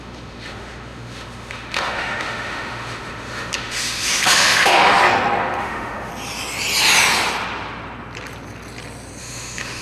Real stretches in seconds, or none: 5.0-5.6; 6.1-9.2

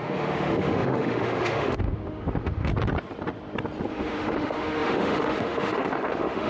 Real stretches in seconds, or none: 2.7-3.9

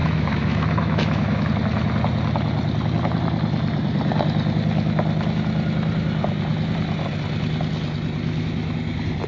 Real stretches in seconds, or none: 1.5-9.3

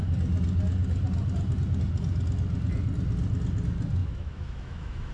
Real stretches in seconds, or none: 0.0-4.0

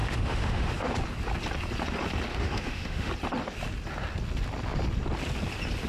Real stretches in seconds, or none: 0.7-2.3; 3.1-5.9